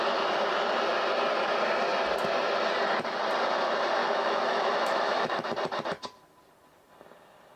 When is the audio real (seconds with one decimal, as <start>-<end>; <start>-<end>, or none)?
0.0-4.0; 5.5-7.6

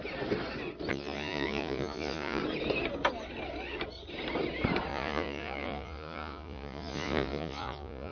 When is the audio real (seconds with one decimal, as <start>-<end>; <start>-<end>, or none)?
0.0-0.9; 2.4-4.9

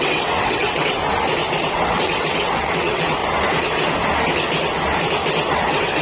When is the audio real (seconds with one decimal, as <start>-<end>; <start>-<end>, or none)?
1.0-1.7; 3.2-5.5

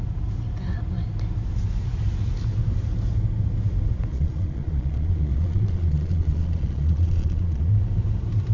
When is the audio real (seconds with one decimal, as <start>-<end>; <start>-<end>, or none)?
0.0-4.1; 7.7-8.5